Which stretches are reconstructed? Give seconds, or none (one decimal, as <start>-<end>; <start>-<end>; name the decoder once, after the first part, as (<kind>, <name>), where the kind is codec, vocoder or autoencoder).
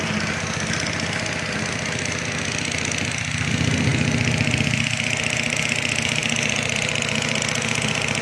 none